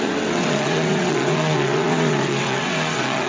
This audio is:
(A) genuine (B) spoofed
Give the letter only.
B